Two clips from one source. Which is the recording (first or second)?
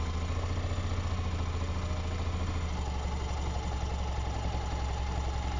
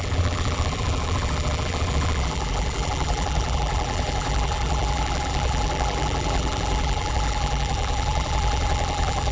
first